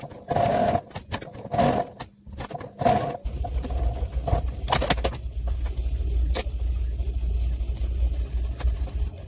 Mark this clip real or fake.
real